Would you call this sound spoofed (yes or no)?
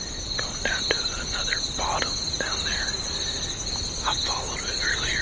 no